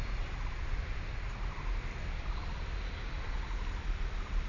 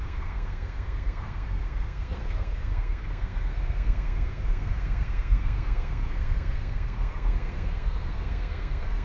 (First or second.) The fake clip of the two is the second